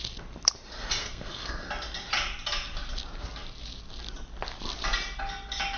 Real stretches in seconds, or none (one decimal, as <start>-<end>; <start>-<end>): 0.0-1.0; 1.7-5.8